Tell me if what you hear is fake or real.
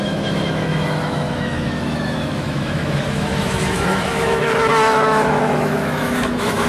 fake